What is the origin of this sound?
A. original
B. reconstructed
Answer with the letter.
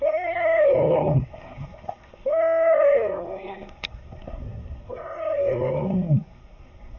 B